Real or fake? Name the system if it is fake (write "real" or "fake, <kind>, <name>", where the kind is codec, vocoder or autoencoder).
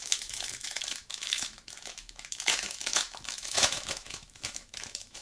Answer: fake, autoencoder, DAC-VAE